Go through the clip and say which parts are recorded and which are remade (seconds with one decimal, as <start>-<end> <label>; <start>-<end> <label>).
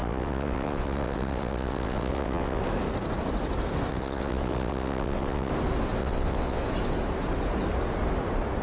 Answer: 0.0-2.6 remade; 2.6-3.9 recorded; 3.9-5.5 remade; 5.5-6.0 recorded; 6.0-6.6 remade; 6.6-8.6 recorded